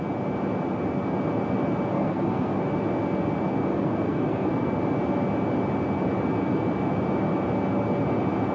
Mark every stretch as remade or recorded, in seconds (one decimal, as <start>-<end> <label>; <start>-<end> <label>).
0.0-1.9 recorded; 1.9-2.6 remade; 2.6-3.7 recorded; 3.7-4.7 remade; 4.7-8.5 recorded